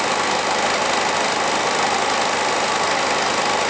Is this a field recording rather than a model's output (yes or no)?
yes